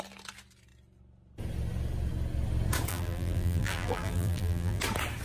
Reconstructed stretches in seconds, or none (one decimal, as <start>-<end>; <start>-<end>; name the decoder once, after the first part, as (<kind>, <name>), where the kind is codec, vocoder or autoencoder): 2.9-4.8 (vocoder, BigVGAN v2)